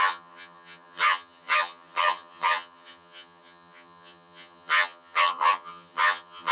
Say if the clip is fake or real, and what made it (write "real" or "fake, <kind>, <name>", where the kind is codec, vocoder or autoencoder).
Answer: fake, vocoder, HiFi-GAN